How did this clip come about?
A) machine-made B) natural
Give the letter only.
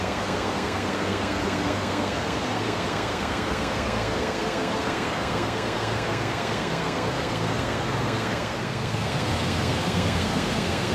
A